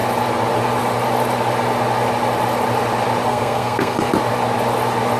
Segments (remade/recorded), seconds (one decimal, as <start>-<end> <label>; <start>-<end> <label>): 0.0-3.3 recorded; 3.3-4.1 remade; 4.1-5.2 recorded